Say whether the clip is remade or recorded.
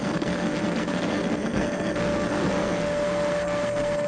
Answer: remade